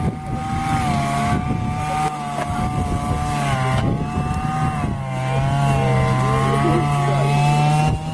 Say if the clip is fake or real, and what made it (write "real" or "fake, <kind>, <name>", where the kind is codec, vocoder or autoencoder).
real